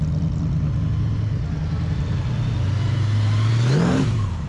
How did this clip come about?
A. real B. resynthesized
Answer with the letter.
A